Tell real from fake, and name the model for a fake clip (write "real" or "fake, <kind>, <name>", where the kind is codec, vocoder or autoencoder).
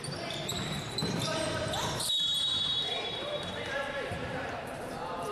fake, vocoder, BigVGAN v2